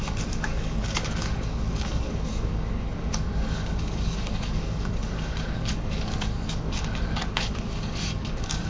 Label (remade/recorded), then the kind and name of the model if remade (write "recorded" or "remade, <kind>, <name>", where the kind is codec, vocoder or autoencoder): remade, codec, DAC